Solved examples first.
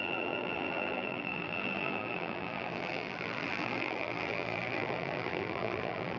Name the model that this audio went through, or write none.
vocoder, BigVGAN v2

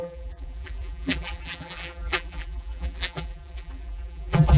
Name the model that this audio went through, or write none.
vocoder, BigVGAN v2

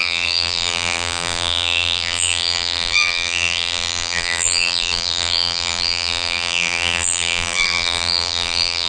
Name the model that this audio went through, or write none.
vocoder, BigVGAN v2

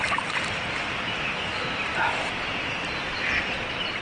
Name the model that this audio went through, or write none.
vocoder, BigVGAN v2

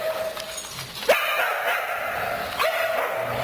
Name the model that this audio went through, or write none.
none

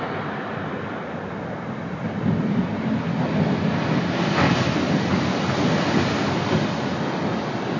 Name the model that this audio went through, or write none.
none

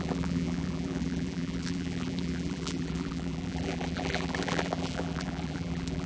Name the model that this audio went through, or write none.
vocoder, BigVGAN v2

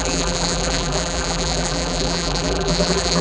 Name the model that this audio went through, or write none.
vocoder, BigVGAN v2